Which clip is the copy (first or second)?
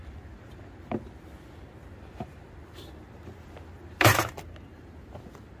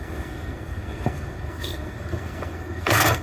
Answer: second